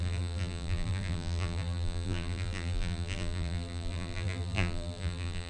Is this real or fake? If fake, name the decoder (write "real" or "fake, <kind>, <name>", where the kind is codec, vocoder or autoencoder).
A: fake, vocoder, BigVGAN v2